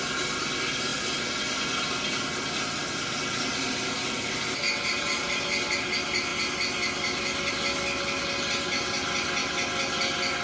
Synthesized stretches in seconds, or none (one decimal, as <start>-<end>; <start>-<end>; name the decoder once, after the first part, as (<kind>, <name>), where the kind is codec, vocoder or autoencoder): none